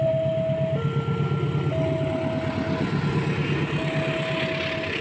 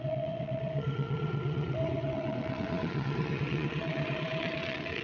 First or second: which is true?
first